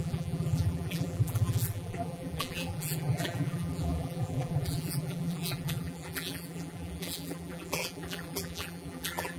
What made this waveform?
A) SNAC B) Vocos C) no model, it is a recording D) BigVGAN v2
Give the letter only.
D